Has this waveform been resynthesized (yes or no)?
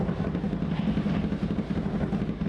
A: no